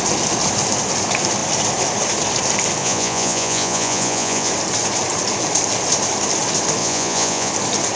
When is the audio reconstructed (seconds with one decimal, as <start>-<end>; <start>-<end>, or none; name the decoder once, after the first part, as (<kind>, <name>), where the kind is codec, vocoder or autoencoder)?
2.8-4.5 (vocoder, Vocos); 6.8-7.5